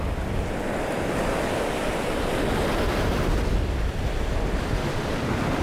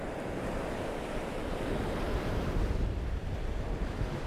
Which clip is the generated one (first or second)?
second